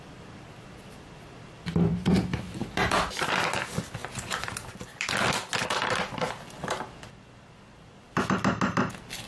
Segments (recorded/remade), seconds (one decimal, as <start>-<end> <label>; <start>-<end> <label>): 0.0-4.0 recorded; 4.0-6.2 remade; 6.2-9.3 recorded